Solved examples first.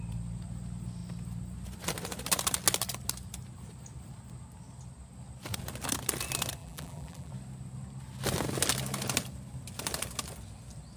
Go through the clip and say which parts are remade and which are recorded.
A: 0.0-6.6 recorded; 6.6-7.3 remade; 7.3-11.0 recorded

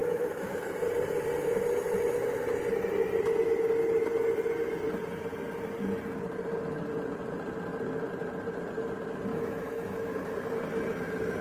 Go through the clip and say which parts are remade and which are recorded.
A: 0.0-0.6 remade; 0.6-9.3 recorded; 9.3-10.3 remade; 10.3-11.4 recorded

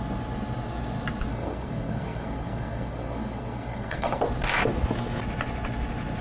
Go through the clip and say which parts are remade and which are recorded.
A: 0.0-1.3 recorded; 1.3-4.2 remade; 4.2-6.2 recorded

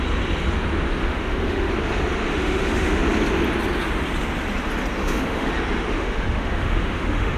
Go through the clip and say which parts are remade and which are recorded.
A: 0.0-1.0 recorded; 1.0-1.7 remade; 1.7-2.3 recorded; 2.3-3.0 remade; 3.0-5.0 recorded; 5.0-5.5 remade; 5.5-5.9 recorded; 5.9-7.4 remade

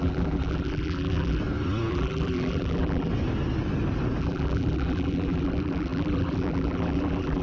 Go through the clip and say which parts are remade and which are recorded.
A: 0.0-1.4 remade; 1.4-1.9 recorded; 1.9-3.1 remade; 3.1-4.2 recorded; 4.2-7.4 remade

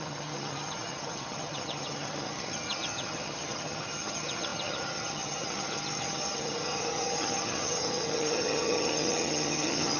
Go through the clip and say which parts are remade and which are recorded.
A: 0.0-10.0 remade

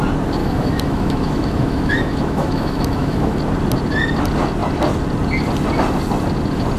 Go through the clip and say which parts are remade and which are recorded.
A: 0.0-0.4 recorded; 0.4-3.4 remade; 3.4-6.8 recorded